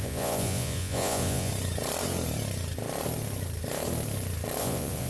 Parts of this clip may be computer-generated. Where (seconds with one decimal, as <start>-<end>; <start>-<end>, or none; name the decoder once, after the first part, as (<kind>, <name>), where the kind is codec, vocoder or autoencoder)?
0.0-1.5 (vocoder, Vocos); 4.6-5.1

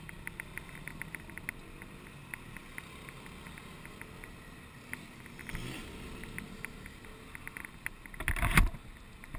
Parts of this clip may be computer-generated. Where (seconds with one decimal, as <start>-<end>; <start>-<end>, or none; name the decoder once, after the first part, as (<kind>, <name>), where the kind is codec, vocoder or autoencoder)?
none

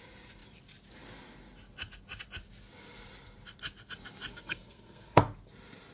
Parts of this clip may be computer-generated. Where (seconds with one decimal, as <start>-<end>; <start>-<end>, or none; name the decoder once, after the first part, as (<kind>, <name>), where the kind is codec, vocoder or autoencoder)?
4.3-5.2 (codec, SNAC)

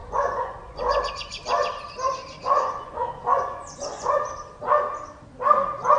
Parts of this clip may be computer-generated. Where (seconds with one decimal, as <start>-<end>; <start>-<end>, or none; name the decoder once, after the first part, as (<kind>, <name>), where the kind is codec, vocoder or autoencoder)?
0.0-1.1 (vocoder, Vocos); 2.4-4.2

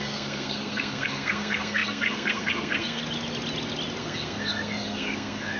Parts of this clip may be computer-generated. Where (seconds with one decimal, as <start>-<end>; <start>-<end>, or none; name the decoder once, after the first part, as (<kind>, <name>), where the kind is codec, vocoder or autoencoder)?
0.0-3.0 (codec, SNAC); 4.0-5.6

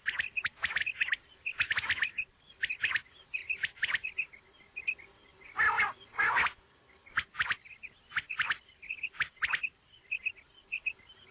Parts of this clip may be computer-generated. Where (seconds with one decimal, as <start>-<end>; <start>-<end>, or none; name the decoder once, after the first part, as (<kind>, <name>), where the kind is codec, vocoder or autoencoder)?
none

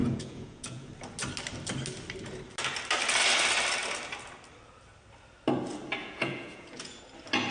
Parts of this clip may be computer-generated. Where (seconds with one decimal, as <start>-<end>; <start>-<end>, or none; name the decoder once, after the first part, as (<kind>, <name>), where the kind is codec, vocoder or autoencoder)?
0.0-0.9 (vocoder, Vocos); 6.0-7.0

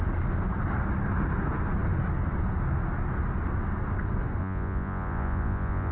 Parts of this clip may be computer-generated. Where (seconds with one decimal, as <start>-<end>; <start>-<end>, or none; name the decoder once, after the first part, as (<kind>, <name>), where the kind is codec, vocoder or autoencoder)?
4.4-5.9 (vocoder, Vocos)